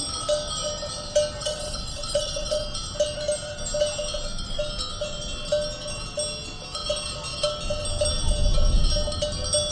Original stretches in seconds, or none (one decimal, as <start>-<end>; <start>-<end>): 0.0-1.4; 2.6-9.7